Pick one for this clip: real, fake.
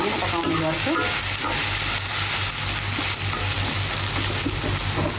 real